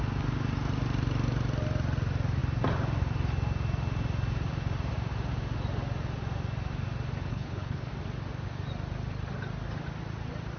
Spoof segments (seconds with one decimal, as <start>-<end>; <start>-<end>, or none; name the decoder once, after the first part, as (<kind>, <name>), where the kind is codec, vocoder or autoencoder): 7.3-7.9 (codec, HILCodec)

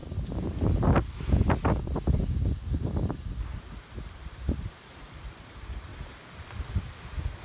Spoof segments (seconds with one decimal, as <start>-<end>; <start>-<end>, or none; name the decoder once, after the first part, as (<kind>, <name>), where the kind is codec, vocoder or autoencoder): 4.2-5.9 (vocoder, BigVGAN v2)